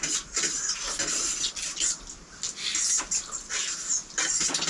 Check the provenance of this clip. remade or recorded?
recorded